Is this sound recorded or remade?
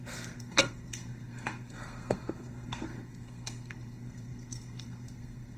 remade